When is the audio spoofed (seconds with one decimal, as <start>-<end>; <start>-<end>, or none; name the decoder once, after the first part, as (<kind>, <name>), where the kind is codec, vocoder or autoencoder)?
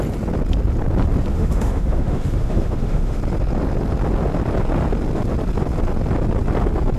1.3-3.2 (autoencoder, DAC-VAE)